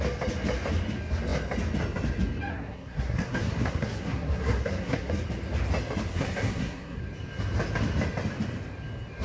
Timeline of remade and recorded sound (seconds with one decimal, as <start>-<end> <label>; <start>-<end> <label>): 0.0-2.5 recorded; 2.5-5.1 remade; 5.1-6.1 recorded; 6.1-7.0 remade; 7.0-9.2 recorded